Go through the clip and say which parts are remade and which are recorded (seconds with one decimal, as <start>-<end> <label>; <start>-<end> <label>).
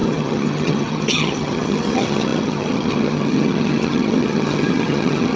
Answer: 0.0-5.4 remade